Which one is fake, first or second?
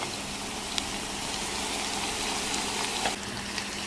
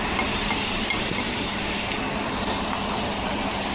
second